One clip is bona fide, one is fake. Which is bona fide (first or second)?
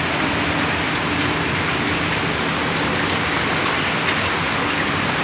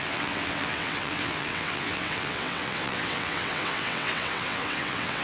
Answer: first